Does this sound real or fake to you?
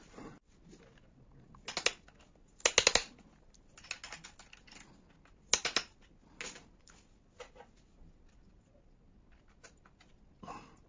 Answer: real